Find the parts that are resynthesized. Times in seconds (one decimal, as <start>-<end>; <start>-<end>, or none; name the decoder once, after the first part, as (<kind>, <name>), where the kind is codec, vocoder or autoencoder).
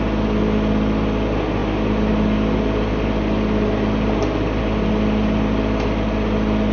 none